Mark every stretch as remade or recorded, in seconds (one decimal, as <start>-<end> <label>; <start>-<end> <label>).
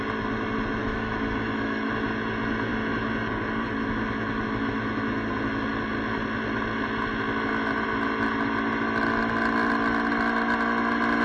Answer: 0.0-0.8 recorded; 0.8-1.9 remade; 1.9-11.2 recorded